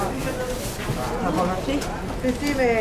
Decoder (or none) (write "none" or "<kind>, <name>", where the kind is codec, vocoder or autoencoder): none